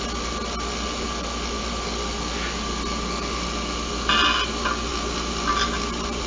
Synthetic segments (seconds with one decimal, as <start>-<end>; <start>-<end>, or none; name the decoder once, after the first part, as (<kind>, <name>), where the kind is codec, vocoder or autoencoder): none